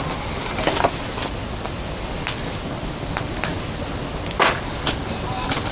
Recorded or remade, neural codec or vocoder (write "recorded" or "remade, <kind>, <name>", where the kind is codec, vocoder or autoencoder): recorded